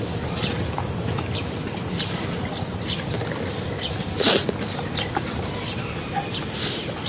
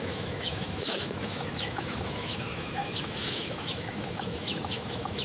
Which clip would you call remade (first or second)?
second